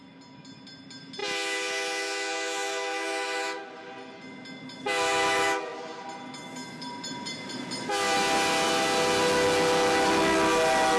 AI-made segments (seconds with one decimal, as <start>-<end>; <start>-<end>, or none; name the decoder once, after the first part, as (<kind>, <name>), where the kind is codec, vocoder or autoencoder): none